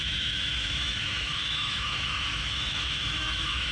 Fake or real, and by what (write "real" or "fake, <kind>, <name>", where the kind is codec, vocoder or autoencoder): fake, autoencoder, DAC-VAE